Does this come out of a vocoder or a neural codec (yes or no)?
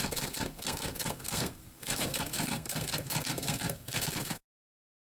yes